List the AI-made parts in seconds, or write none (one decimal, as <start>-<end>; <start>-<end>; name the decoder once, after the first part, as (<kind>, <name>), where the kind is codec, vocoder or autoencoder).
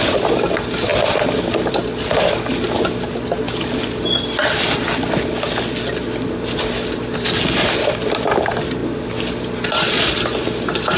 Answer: none